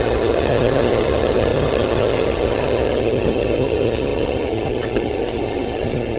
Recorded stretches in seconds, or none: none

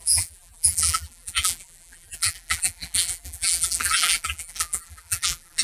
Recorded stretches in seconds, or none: none

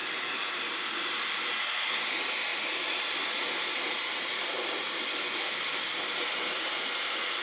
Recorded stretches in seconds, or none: 0.0-7.4

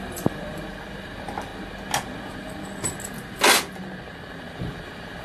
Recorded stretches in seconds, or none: 1.5-4.6